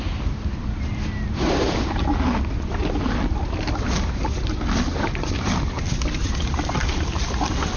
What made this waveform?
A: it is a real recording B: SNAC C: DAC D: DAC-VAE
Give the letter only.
A